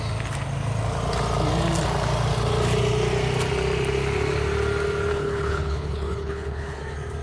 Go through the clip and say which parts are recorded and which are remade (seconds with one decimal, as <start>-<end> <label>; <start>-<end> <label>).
0.0-5.1 recorded; 5.1-6.8 remade; 6.8-7.2 recorded